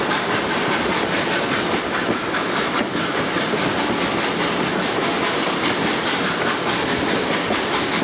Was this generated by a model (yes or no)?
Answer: no